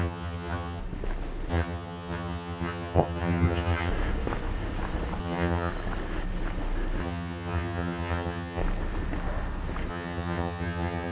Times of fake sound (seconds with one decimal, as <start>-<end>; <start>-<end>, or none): 0.0-0.8; 1.5-3.9; 5.2-5.7; 7.0-8.6; 9.9-11.1